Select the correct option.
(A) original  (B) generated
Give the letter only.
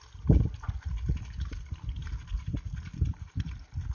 A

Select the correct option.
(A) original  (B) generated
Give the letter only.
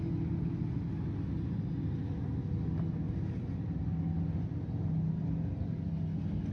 A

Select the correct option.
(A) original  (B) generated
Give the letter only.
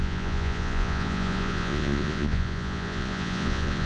B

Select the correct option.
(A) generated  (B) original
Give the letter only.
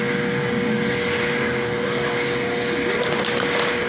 B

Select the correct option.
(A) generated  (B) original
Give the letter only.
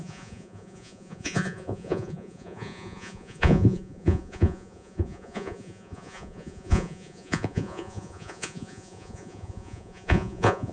A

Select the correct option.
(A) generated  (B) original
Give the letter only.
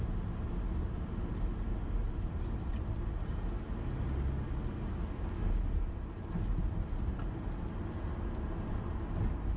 B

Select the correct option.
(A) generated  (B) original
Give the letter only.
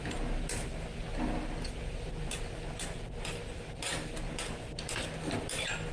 B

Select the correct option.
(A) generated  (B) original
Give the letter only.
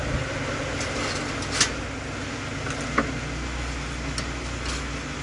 B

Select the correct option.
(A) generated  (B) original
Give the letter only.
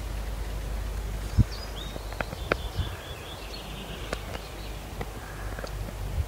B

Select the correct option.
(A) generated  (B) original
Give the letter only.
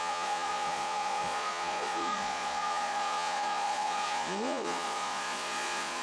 A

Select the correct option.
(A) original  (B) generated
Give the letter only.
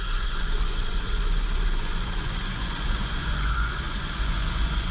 B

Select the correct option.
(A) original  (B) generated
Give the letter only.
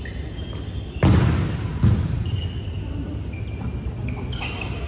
A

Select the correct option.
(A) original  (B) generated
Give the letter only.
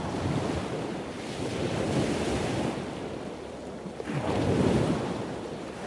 A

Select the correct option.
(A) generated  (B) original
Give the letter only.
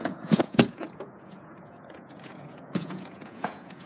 A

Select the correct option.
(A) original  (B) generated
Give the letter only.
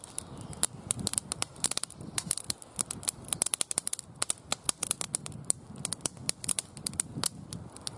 A